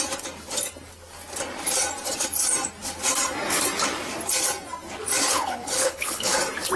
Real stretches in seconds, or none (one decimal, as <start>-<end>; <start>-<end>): 0.0-5.3; 6.3-6.8